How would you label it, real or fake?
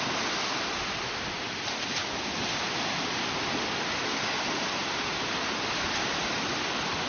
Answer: real